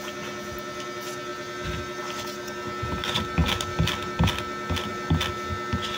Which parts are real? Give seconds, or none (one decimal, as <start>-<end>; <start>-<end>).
0.0-1.3; 2.0-6.0